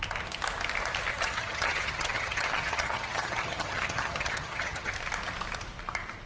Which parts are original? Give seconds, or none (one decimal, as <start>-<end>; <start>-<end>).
0.0-1.1; 4.9-6.3